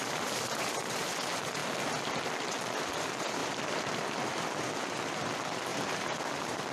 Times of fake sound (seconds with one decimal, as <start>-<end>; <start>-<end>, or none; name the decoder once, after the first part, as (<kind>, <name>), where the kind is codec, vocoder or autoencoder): 0.0-1.0 (vocoder, BigVGAN v2); 3.4-3.9; 5.7-6.2